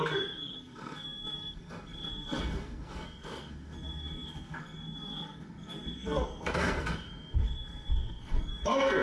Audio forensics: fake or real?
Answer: fake